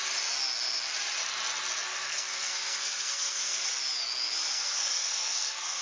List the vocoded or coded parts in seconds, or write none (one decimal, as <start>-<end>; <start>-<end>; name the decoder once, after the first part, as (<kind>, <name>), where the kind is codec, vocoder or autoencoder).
1.9-3.7 (codec, SNAC); 4.5-5.8